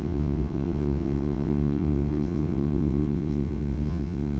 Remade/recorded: remade